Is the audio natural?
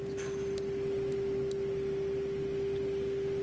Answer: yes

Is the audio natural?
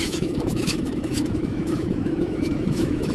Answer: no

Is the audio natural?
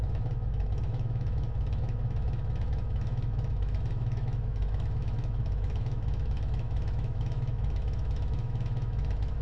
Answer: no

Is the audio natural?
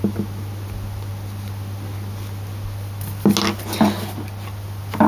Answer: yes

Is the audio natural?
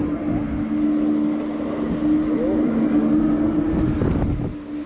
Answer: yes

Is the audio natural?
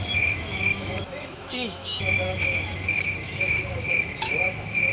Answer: no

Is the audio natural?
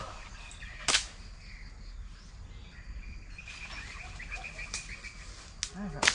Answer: yes